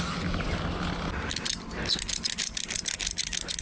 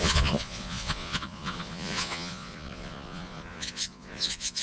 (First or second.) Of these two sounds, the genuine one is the first